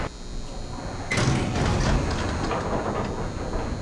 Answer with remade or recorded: recorded